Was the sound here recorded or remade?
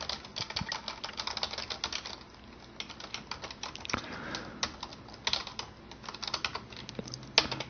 recorded